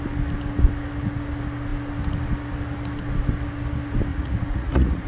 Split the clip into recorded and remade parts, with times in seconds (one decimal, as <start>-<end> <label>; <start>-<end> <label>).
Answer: 0.0-4.1 recorded; 4.1-5.1 remade